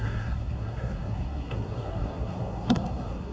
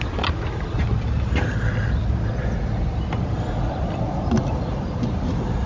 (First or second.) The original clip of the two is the second